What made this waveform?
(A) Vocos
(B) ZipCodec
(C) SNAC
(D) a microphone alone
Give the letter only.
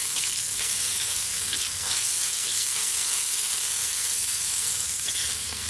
C